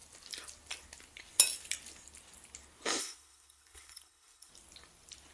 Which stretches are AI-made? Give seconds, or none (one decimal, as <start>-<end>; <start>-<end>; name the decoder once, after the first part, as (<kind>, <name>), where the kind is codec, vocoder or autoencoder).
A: 3.0-4.5 (codec, HILCodec)